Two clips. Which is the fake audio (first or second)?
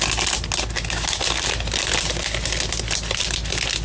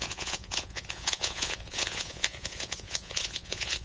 second